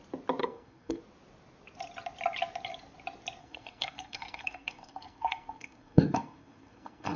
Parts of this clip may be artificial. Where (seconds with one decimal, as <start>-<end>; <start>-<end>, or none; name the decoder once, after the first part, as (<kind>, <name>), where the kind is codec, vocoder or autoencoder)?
0.4-1.0 (codec, SNAC); 3.4-7.2